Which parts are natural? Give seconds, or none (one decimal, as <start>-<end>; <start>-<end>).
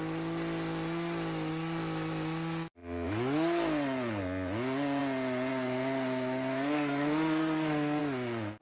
0.0-5.5; 8.0-8.6